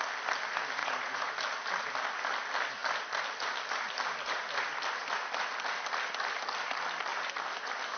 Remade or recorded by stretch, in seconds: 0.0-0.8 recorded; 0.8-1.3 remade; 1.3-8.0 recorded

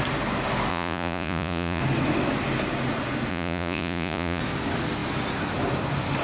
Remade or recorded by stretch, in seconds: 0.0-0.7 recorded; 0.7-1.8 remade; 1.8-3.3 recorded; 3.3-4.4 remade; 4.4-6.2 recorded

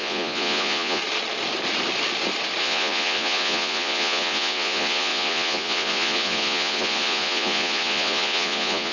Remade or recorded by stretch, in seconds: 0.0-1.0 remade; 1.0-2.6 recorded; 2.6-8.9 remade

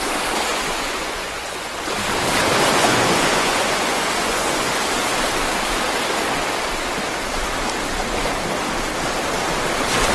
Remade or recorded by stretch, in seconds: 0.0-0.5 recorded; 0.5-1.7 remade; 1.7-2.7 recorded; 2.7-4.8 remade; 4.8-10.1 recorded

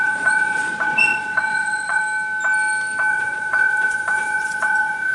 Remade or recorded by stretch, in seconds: 0.0-2.0 remade; 2.0-3.1 recorded; 3.1-5.1 remade

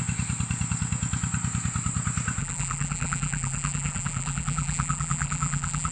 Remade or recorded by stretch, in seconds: 0.0-2.4 recorded; 2.4-5.9 remade

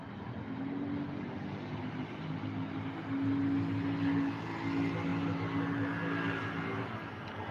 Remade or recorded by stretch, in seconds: 0.0-7.5 recorded